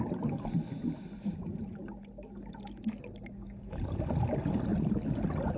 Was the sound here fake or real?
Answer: real